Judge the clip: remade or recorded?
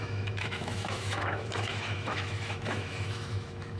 remade